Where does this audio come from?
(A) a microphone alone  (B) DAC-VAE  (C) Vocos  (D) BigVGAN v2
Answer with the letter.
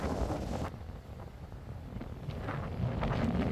A